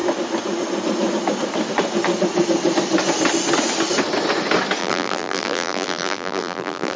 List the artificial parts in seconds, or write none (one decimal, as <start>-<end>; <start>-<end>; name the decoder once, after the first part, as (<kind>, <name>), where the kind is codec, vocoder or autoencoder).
4.8-7.0 (vocoder, BigVGAN v2)